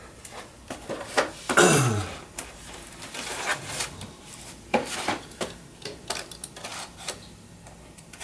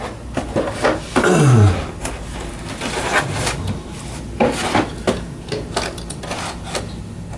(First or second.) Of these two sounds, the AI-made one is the first